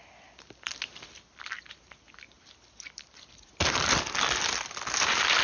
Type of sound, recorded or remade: recorded